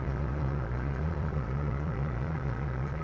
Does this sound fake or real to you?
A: fake